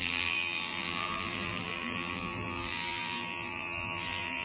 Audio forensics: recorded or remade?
remade